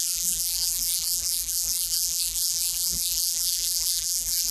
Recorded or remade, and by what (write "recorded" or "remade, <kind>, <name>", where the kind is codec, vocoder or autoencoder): remade, vocoder, BigVGAN v2